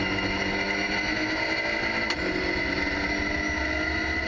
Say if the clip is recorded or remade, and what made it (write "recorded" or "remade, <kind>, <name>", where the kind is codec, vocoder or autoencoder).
recorded